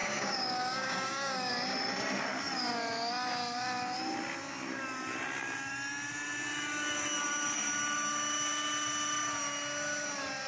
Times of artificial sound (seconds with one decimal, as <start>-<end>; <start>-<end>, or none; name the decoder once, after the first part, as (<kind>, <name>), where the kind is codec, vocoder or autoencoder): 0.0-1.5 (codec, DAC)